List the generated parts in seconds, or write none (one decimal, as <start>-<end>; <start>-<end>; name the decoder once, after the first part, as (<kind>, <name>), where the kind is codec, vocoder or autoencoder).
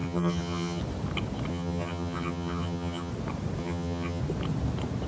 0.0-0.8 (vocoder, HiFi-GAN); 1.5-3.1; 3.6-4.2